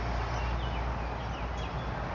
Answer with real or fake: real